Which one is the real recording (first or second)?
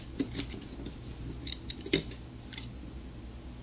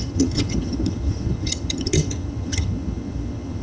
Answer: first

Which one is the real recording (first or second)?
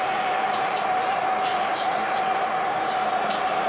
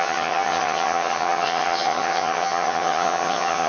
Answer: first